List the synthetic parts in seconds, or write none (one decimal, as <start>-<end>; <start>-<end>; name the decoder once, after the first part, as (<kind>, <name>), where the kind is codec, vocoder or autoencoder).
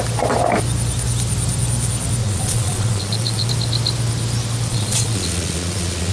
2.2-3.5 (vocoder, Vocos); 4.7-6.1